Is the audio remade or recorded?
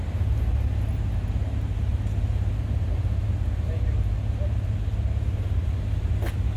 recorded